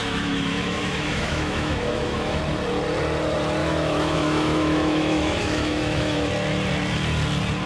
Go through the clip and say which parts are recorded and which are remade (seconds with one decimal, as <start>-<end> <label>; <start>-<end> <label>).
0.0-2.4 remade; 2.4-3.6 recorded; 3.6-6.3 remade; 6.3-7.7 recorded